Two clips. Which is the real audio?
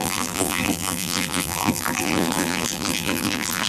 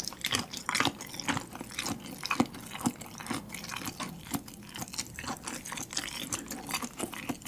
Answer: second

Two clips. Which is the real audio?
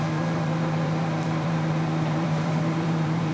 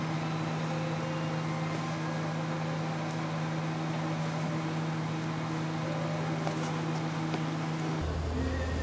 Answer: second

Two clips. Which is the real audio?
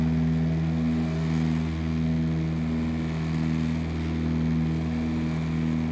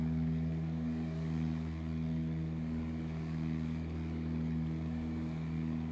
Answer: first